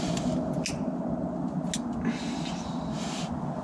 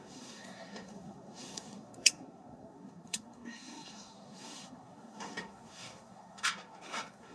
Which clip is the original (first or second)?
first